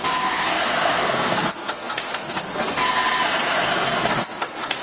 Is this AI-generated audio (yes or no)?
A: yes